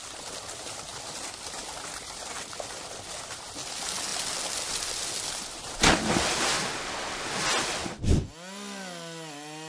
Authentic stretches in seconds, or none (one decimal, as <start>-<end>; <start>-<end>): 0.0-9.7